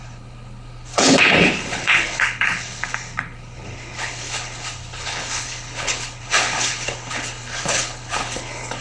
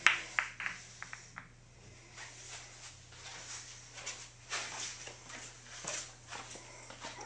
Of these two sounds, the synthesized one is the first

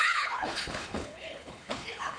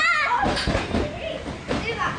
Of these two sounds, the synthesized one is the first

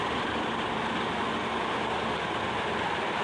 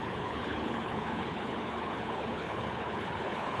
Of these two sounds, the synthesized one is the second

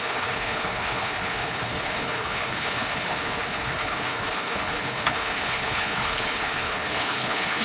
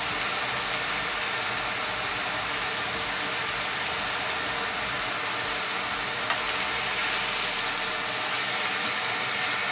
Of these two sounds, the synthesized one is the first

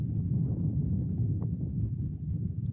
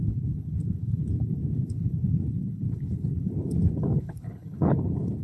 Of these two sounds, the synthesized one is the second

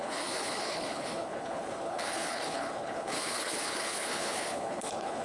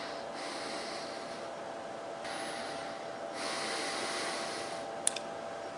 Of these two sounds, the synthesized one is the first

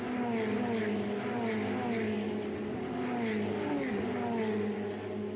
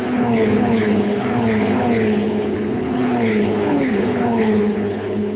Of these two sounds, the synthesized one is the second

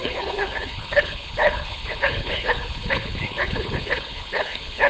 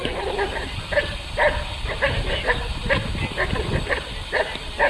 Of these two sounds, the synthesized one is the first